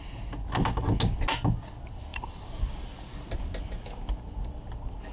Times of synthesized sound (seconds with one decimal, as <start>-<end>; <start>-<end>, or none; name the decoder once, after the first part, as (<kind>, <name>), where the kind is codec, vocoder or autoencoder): 2.1-2.6 (vocoder, BigVGAN v2)